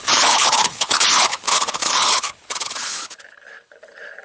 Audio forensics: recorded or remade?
remade